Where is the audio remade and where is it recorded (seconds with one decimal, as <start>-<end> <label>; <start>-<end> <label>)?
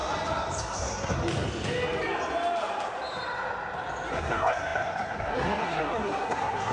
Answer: 0.0-0.6 recorded; 0.6-1.2 remade; 1.2-4.1 recorded; 4.1-6.7 remade